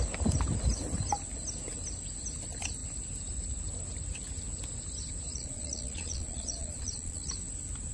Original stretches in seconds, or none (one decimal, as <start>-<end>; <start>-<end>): 0.0-5.3; 7.3-7.9